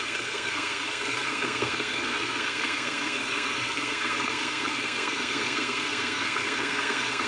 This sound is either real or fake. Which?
fake